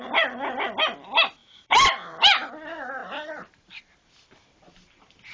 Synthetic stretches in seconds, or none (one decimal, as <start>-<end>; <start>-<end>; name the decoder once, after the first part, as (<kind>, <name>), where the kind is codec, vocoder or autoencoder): 1.4-2.5 (vocoder, BigVGAN v2); 3.0-3.8